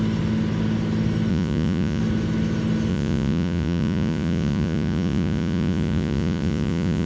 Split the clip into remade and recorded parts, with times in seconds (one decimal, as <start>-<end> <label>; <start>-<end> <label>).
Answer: 0.0-1.3 recorded; 1.3-2.0 remade; 2.0-2.9 recorded; 2.9-7.1 remade